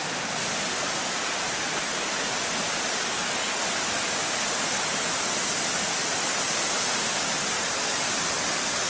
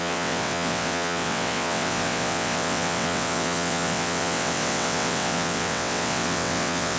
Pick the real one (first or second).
first